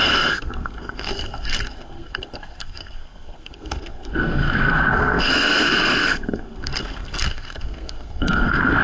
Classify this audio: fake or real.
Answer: fake